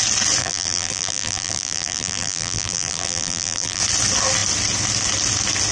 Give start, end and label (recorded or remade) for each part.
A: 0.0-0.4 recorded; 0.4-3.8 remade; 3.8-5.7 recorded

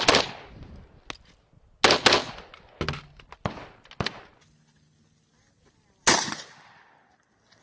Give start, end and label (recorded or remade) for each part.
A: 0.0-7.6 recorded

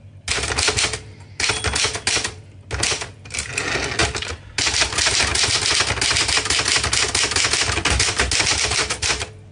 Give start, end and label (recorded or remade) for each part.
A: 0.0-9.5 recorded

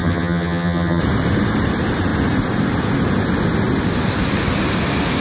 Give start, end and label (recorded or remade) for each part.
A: 0.0-1.0 remade; 1.0-5.2 recorded

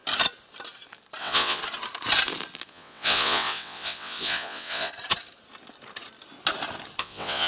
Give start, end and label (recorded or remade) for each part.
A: 0.0-1.2 recorded; 1.2-1.6 remade; 1.6-2.7 recorded; 2.7-4.9 remade; 4.9-7.0 recorded; 7.0-7.5 remade